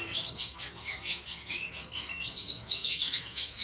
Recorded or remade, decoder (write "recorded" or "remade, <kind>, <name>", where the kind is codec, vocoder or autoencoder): remade, codec, SNAC